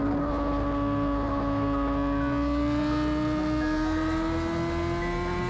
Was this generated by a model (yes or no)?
no